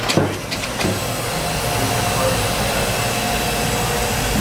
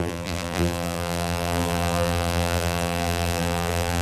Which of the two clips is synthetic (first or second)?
second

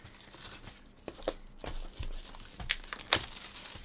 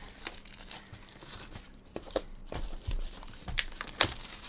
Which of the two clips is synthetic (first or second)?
second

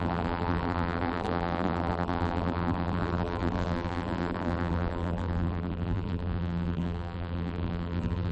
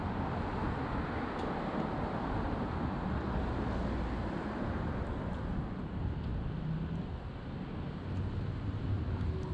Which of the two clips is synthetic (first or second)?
first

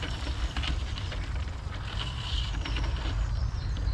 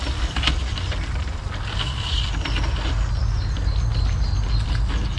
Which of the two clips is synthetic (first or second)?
first